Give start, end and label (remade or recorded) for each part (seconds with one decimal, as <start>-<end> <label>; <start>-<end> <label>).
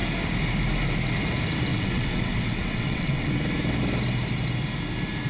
0.0-1.7 recorded; 1.7-3.3 remade; 3.3-5.3 recorded